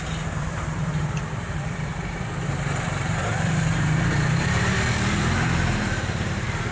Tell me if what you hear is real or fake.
fake